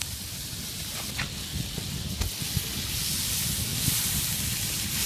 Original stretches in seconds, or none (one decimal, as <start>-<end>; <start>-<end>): 0.0-5.1